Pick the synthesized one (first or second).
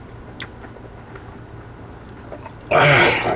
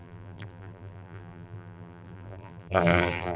second